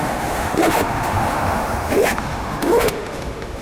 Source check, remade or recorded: remade